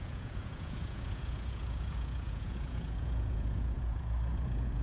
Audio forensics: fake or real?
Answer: fake